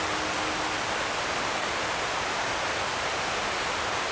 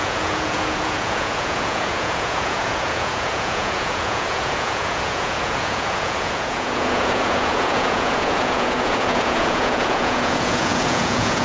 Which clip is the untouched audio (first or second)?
first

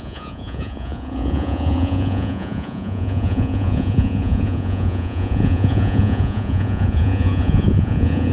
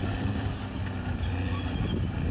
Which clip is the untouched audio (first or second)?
second